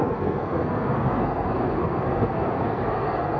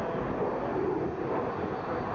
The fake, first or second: first